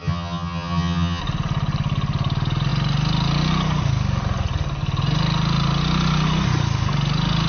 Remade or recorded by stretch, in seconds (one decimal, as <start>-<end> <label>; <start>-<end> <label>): 0.0-1.2 remade; 1.2-7.5 recorded

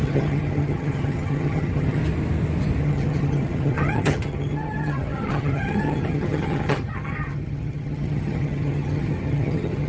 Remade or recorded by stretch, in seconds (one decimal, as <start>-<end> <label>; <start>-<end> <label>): 0.0-2.0 remade; 2.0-2.8 recorded; 2.8-9.9 remade

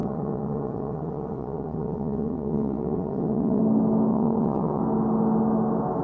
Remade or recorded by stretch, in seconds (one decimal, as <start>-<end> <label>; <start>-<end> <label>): 0.0-3.6 remade; 3.6-4.1 recorded; 4.1-4.8 remade; 4.8-6.0 recorded